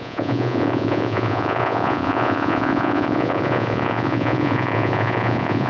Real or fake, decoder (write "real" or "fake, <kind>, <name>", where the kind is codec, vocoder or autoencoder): fake, vocoder, Vocos